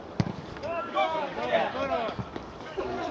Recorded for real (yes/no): no